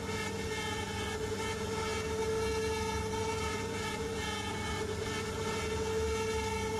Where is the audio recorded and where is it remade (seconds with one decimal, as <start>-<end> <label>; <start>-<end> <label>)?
0.0-6.8 recorded